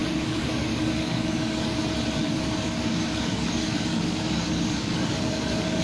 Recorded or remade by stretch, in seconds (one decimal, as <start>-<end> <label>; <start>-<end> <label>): 0.0-1.8 remade; 1.8-2.2 recorded; 2.2-5.8 remade